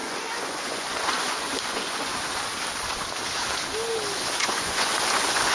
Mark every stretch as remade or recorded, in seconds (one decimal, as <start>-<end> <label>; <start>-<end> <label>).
0.0-2.1 remade; 2.1-4.4 recorded; 4.4-5.5 remade

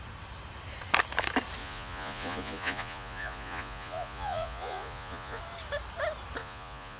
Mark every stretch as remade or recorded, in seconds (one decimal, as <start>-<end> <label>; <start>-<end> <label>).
0.0-1.6 recorded; 1.6-5.4 remade; 5.4-6.4 recorded; 6.4-7.0 remade

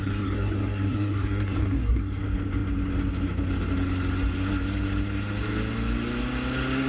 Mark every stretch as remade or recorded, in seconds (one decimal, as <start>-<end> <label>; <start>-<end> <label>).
0.0-2.2 remade; 2.2-6.9 recorded

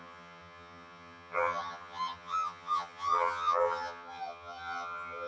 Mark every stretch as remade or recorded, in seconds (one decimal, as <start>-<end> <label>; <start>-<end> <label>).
0.0-5.3 remade

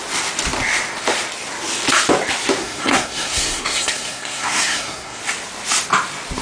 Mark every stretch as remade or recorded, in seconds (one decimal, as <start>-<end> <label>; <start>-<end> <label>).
0.0-2.6 recorded; 2.6-5.2 remade; 5.2-6.4 recorded

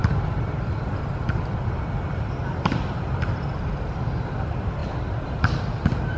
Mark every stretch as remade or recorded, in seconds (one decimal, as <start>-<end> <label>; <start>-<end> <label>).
0.0-3.7 remade; 3.7-6.2 recorded

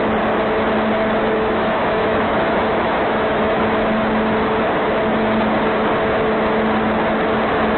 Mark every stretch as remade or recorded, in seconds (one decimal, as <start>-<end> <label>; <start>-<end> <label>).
0.0-1.2 recorded; 1.2-3.6 remade; 3.6-7.8 recorded

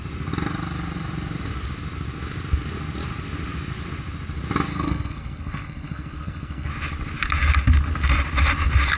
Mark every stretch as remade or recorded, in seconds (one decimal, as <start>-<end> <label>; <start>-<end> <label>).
0.0-4.7 recorded; 4.7-6.7 remade; 6.7-9.0 recorded